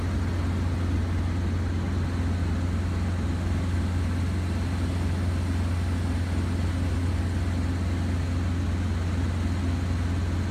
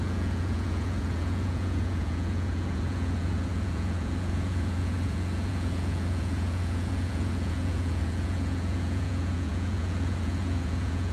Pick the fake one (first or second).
second